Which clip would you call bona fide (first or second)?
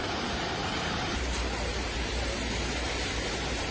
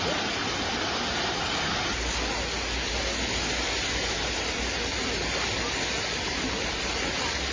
second